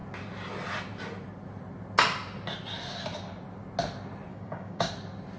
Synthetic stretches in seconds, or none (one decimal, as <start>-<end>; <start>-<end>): 4.3-4.9